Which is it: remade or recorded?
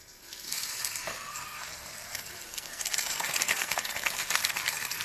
remade